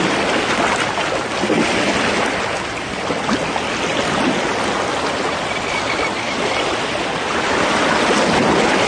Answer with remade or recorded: recorded